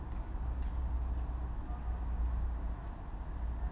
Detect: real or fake real